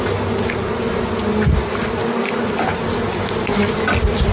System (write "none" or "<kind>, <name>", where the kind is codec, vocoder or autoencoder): none